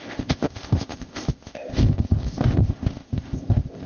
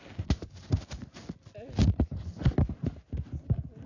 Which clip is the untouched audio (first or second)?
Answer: second